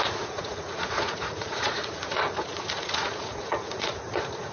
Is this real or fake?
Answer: fake